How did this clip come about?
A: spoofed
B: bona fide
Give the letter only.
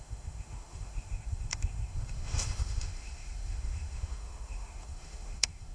A